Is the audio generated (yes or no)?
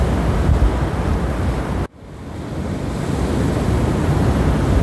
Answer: no